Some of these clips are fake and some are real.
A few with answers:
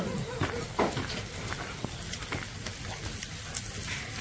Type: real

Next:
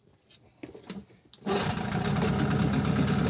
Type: real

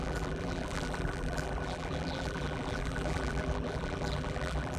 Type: fake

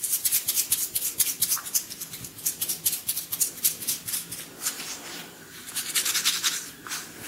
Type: fake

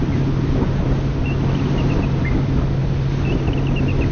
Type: real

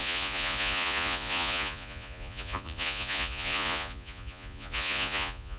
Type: fake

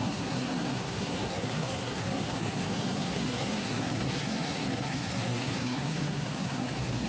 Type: fake